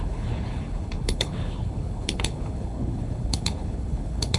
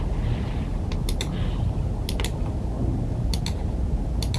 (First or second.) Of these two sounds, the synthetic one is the first